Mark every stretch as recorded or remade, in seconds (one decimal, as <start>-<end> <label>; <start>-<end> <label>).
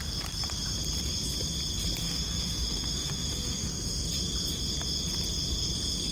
0.0-2.0 recorded; 2.0-3.7 remade; 3.7-6.1 recorded